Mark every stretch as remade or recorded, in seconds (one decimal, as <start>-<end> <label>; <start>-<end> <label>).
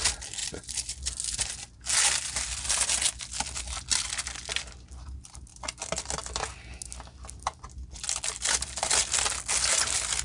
0.0-10.2 recorded